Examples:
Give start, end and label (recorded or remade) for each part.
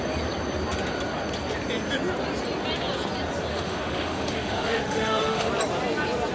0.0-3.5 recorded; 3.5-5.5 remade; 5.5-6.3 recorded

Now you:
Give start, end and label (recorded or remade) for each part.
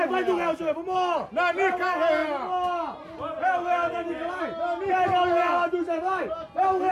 0.0-6.9 recorded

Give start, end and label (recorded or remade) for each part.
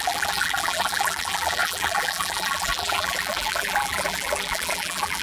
0.0-5.2 remade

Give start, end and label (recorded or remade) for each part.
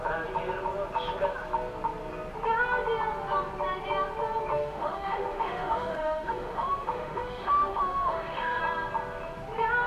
0.0-4.5 recorded; 4.5-8.6 remade; 8.6-9.9 recorded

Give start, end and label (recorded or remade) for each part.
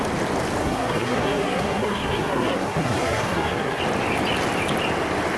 0.0-0.6 recorded; 0.6-3.8 remade; 3.8-5.4 recorded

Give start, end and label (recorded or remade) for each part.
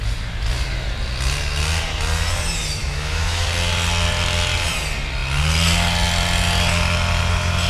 0.0-2.8 recorded; 2.8-3.5 remade; 3.5-7.7 recorded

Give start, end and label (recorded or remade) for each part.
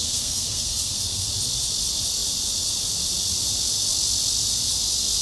0.0-1.3 remade; 1.3-5.2 recorded